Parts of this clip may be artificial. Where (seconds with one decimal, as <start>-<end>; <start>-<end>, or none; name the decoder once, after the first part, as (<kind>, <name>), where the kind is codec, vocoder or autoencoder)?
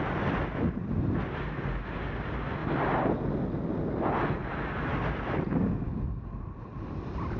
none